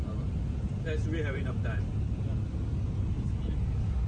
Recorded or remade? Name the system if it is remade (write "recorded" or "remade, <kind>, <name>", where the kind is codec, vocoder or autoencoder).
recorded